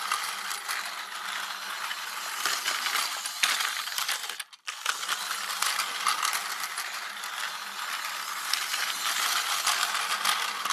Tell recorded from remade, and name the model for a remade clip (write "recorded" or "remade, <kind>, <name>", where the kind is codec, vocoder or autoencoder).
recorded